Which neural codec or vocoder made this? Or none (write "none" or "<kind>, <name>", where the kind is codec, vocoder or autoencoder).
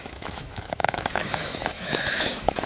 autoencoder, DAC-VAE